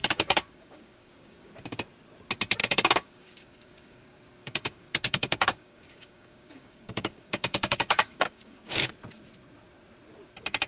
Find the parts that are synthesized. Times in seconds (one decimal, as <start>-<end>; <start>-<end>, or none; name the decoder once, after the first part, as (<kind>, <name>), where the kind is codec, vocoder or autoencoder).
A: 0.0-1.5 (codec, DAC); 2.6-4.0; 4.4-8.9